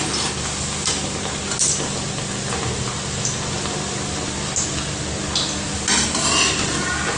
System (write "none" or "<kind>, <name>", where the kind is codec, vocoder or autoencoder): none